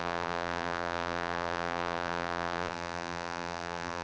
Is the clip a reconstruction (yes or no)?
yes